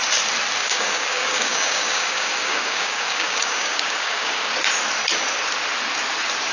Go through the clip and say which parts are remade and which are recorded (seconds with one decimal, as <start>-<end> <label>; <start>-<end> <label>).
0.0-0.6 recorded; 0.6-4.5 remade; 4.5-6.5 recorded